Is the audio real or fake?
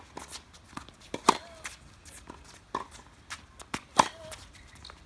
real